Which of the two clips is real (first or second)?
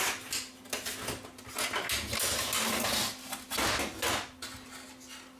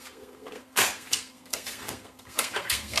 first